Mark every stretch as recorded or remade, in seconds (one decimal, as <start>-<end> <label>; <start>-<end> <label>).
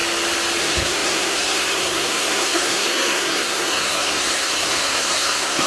0.0-0.6 recorded; 0.6-5.7 remade